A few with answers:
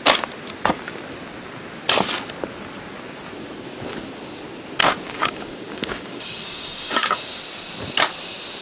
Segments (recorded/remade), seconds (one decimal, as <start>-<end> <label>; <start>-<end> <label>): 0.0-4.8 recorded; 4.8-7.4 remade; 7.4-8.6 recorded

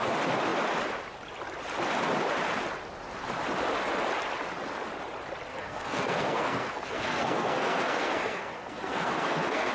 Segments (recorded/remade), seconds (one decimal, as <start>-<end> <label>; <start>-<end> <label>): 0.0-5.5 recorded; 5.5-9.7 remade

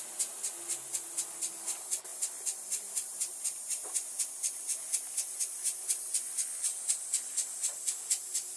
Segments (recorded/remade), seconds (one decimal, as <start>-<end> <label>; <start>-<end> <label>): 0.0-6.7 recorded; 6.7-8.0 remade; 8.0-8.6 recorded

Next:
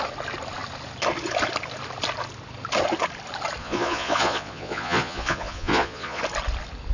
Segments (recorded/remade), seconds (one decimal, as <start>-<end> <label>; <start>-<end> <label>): 0.0-3.6 recorded; 3.6-6.2 remade; 6.2-6.9 recorded

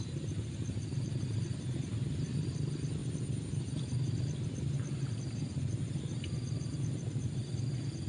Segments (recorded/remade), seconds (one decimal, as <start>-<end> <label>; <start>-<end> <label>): 0.0-8.1 recorded